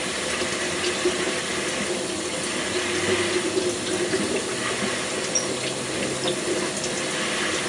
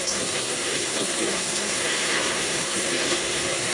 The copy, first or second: second